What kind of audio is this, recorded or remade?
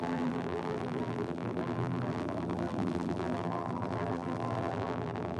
remade